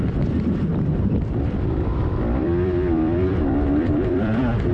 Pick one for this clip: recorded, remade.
remade